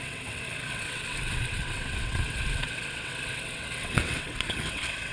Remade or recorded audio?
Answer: remade